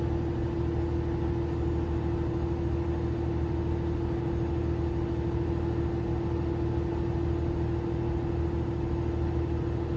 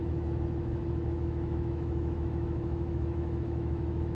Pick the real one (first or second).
first